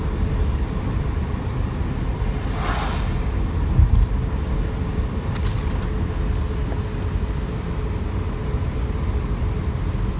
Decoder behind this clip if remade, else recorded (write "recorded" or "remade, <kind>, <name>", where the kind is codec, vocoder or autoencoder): recorded